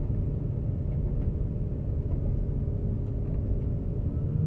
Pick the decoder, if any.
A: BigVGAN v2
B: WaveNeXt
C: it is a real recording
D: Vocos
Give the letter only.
C